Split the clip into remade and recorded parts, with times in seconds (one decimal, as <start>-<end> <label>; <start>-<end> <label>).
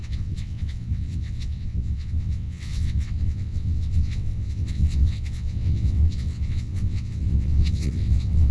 0.0-8.5 remade